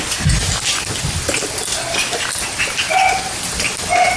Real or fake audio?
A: real